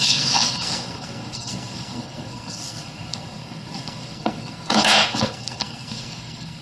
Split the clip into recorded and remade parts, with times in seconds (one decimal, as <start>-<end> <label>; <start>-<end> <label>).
0.0-6.6 remade